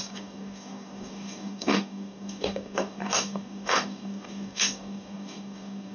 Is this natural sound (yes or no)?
no